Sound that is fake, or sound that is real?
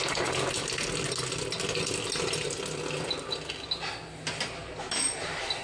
real